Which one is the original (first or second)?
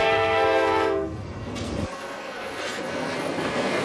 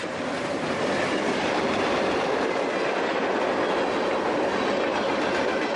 second